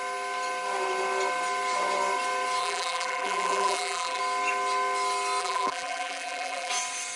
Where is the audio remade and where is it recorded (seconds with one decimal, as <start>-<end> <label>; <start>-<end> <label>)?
0.0-2.6 recorded; 2.6-4.2 remade; 4.2-5.4 recorded; 5.4-6.7 remade; 6.7-7.2 recorded